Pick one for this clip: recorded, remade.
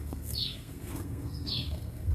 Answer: remade